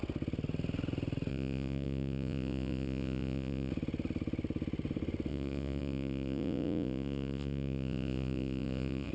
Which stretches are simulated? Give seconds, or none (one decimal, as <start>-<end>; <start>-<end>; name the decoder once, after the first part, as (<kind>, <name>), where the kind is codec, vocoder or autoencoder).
1.3-3.7 (vocoder, Vocos); 5.3-9.1